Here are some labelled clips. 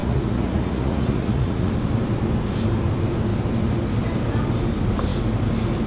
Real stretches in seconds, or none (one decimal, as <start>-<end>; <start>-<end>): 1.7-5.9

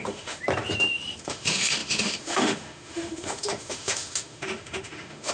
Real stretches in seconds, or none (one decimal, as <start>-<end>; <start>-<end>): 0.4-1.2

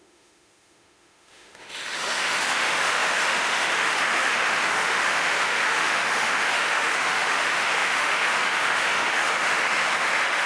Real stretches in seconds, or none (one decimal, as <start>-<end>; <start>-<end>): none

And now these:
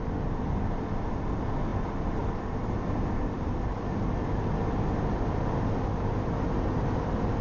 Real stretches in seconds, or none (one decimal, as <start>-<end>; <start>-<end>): 0.0-7.4

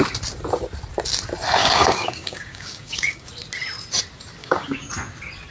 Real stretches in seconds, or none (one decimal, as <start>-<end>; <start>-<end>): 0.0-1.6; 3.3-4.4; 4.9-5.5

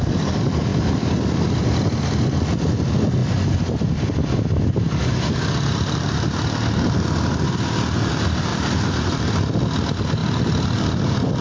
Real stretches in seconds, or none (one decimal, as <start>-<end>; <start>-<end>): 0.0-8.5; 9.6-11.4

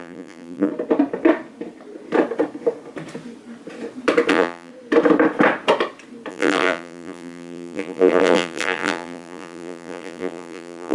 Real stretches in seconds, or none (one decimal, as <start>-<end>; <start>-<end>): 0.7-4.3; 4.7-6.3